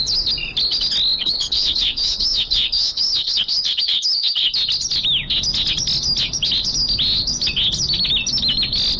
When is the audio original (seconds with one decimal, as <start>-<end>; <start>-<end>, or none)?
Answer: 0.0-1.2; 4.5-9.0